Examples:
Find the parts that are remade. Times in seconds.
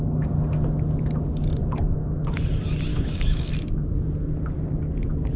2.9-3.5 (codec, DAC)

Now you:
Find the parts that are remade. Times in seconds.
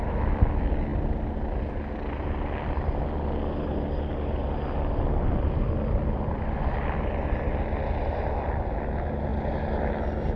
none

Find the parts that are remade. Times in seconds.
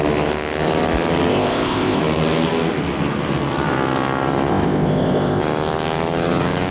1.3-2.0 (codec, ZipCodec); 4.5-5.4